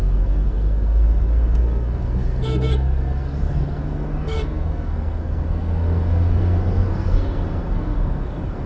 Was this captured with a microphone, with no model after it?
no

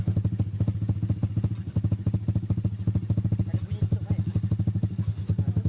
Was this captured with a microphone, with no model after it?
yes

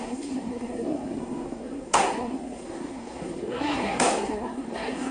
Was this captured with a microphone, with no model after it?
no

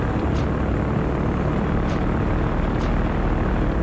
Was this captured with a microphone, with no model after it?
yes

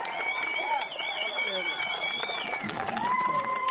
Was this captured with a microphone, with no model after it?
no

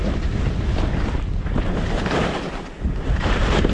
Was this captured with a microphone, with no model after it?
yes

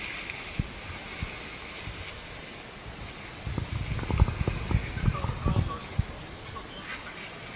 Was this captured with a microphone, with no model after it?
yes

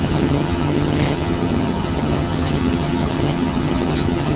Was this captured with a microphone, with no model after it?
no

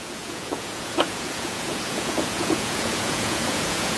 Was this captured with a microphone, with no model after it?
no